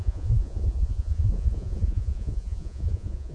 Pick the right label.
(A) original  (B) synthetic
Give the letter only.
B